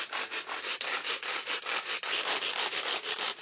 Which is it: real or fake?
real